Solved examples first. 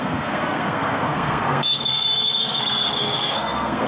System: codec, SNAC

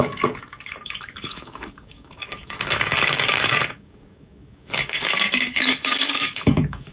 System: codec, DAC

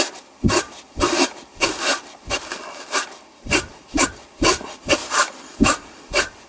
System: none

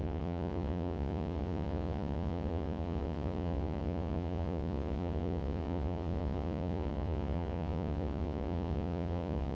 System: vocoder, Vocos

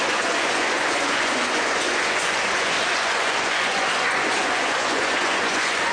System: vocoder, Vocos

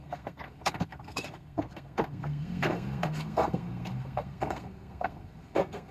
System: codec, SNAC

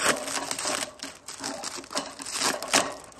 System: none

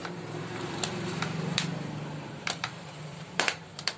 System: vocoder, BigVGAN v2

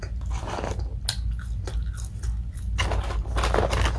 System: none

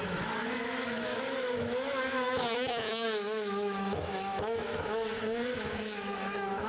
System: autoencoder, DAC-VAE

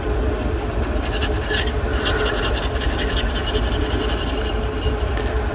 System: none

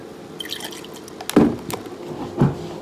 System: none